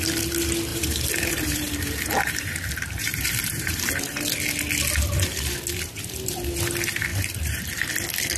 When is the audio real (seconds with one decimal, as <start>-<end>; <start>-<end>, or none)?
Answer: 0.0-0.7; 3.9-7.1; 7.8-8.4